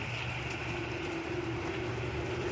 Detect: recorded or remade recorded